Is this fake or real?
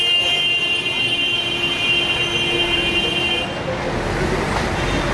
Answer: real